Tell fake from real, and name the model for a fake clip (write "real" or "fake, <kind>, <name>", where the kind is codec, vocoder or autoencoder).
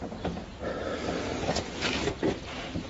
real